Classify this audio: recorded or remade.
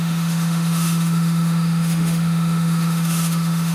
remade